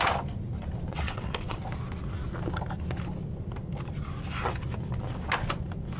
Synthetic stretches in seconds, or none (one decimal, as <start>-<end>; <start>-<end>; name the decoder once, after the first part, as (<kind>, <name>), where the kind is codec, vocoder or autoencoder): 0.9-1.6 (vocoder, WaveNeXt)